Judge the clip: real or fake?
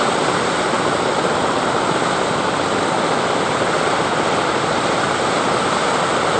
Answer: real